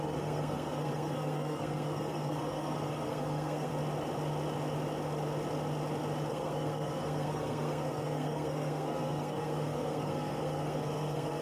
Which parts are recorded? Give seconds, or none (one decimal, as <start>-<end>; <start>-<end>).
3.7-6.3